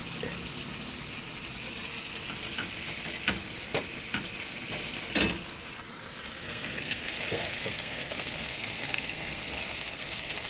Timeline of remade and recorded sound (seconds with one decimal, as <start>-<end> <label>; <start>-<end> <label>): 0.0-6.4 recorded; 6.4-10.5 remade